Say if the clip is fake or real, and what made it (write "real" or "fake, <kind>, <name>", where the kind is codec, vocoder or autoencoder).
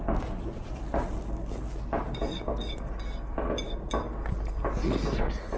real